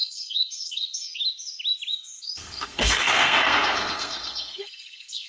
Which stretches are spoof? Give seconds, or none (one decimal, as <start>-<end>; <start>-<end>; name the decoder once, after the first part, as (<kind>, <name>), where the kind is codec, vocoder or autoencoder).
0.0-1.2 (codec, SNAC); 1.9-5.3